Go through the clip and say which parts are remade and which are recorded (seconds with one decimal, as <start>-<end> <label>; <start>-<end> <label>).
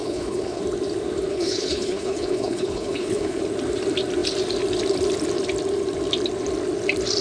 0.0-0.6 remade; 0.6-1.3 recorded; 1.3-3.4 remade; 3.4-7.2 recorded